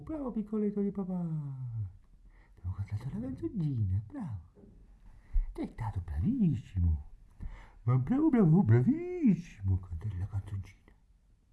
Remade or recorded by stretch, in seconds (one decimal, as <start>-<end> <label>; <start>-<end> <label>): 0.0-11.5 recorded